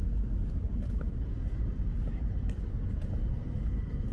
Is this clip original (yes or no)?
yes